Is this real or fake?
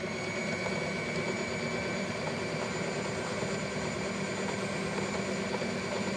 real